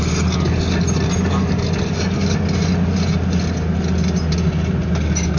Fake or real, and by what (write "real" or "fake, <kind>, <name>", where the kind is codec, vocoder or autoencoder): real